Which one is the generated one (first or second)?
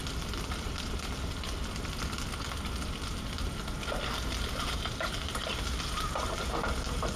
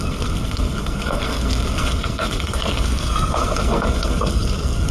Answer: second